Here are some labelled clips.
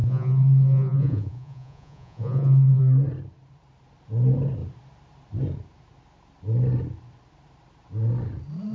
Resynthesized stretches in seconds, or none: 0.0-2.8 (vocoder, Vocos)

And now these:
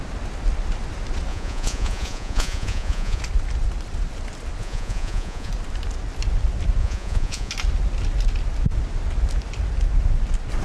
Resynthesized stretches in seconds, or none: 1.3-3.2 (vocoder, Vocos); 4.6-5.5; 6.8-7.5